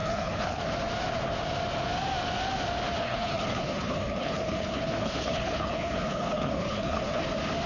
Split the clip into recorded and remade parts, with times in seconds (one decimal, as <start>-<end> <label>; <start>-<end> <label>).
0.0-0.6 remade; 0.6-3.0 recorded; 3.0-7.2 remade; 7.2-7.7 recorded